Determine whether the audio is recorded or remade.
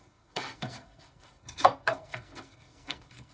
remade